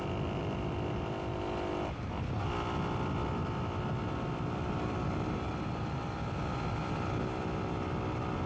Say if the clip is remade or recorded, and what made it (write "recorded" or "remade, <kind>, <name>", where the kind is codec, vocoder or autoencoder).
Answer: recorded